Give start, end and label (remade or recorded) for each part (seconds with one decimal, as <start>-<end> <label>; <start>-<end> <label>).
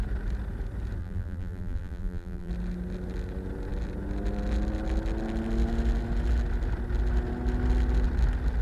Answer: 0.0-1.0 recorded; 1.0-2.5 remade; 2.5-8.6 recorded